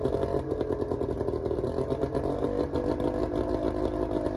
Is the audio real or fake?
real